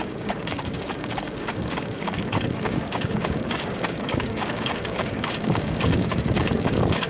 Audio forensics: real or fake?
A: fake